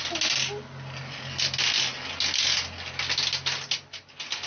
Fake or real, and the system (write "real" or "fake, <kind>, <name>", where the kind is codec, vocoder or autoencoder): real